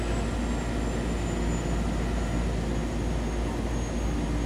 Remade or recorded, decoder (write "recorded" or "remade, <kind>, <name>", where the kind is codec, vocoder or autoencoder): recorded